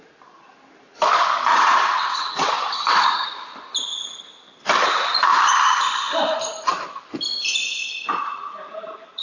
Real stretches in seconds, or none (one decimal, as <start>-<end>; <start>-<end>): 0.0-1.5; 2.5-9.2